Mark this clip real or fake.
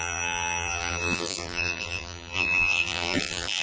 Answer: fake